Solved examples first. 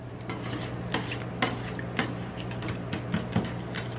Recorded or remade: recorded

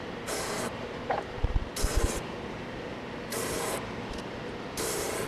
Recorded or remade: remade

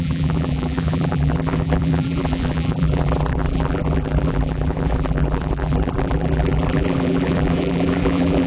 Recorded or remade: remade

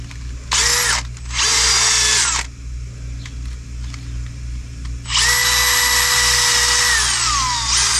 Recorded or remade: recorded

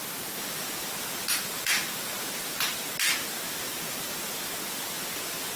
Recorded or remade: recorded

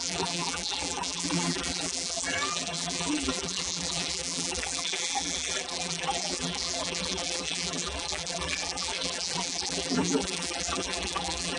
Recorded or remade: remade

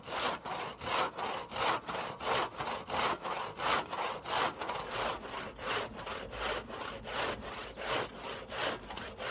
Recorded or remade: recorded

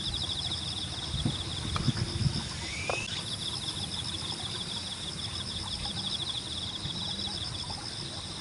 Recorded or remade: recorded